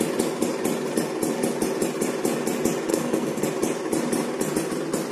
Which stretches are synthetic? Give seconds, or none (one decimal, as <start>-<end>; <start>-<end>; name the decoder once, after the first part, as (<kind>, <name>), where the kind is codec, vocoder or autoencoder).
2.9-3.4 (codec, SNAC)